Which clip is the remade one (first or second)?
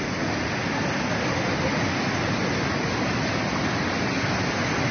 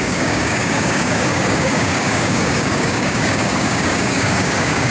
second